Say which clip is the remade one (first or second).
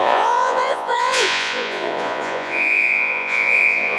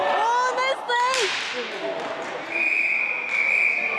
first